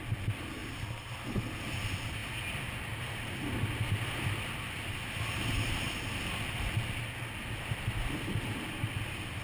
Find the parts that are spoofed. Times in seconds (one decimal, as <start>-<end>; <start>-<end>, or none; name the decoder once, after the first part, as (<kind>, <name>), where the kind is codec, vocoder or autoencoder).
none